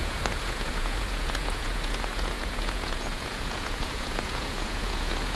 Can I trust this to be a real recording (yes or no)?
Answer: no